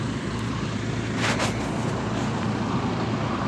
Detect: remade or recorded recorded